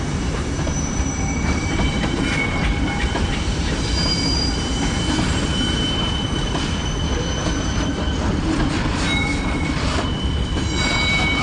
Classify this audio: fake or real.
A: fake